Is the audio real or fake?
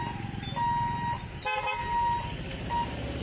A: real